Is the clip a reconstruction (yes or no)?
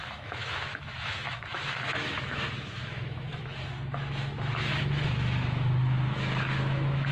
yes